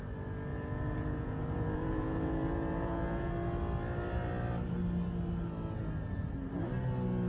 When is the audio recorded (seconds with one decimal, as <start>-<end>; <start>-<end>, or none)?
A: 0.0-0.5; 3.3-7.3